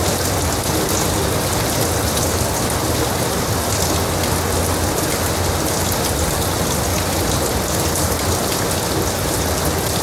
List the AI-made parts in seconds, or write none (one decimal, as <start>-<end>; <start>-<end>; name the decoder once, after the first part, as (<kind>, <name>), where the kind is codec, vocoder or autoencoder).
none